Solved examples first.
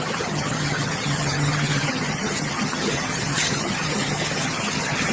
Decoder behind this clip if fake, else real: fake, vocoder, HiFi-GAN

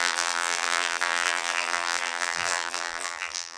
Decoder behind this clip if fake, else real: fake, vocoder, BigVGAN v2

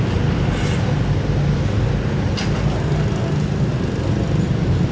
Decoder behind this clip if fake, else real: real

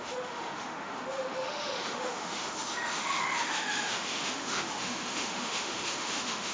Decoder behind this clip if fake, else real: fake, autoencoder, DAC-VAE